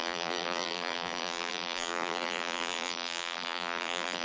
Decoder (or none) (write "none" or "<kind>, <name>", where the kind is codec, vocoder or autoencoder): vocoder, BigVGAN v2